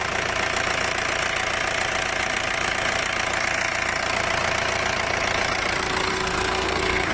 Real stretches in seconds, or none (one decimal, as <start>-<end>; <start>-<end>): 0.0-6.1